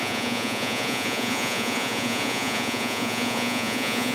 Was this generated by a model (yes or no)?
yes